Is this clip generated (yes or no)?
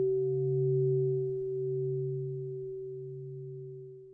no